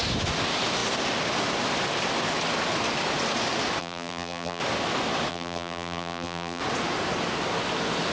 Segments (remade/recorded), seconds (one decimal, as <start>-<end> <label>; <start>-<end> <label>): 0.0-3.8 recorded; 3.8-4.6 remade; 4.6-5.3 recorded; 5.3-6.6 remade; 6.6-8.1 recorded